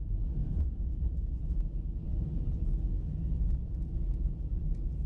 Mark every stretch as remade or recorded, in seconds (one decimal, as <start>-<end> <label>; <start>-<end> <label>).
0.0-0.4 recorded; 0.4-1.1 remade; 1.1-4.5 recorded; 4.5-5.1 remade